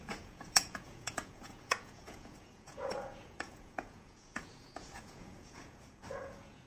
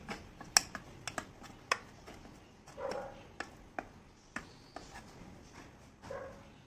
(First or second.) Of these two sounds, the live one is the second